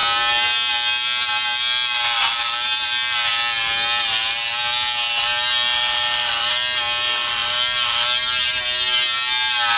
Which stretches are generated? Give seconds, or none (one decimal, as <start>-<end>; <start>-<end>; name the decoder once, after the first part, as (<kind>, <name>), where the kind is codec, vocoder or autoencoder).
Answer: none